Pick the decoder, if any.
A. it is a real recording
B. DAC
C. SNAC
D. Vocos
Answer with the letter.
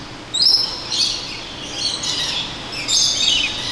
A